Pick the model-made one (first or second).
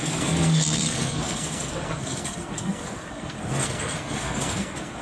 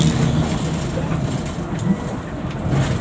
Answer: first